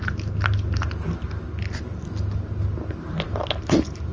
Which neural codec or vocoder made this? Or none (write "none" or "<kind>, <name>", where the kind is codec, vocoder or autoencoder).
none